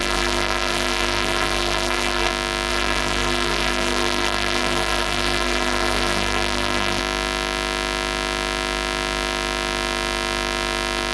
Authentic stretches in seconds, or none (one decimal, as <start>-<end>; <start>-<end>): 2.3-2.7; 7.0-11.1